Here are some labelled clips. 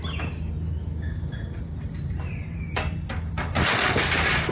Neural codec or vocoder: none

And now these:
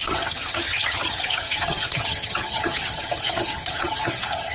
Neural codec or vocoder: vocoder, HiFi-GAN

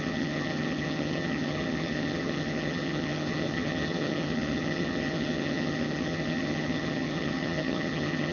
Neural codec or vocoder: vocoder, HiFi-GAN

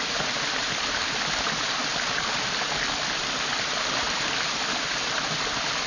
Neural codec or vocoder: none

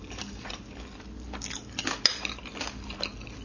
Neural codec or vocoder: none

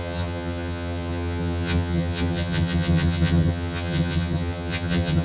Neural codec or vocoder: vocoder, HiFi-GAN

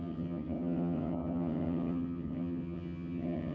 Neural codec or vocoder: vocoder, HiFi-GAN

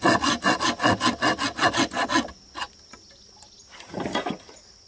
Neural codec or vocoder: none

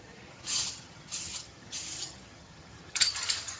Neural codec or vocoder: vocoder, HiFi-GAN